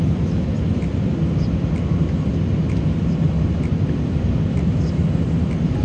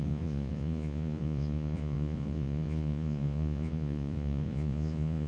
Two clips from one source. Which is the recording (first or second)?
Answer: first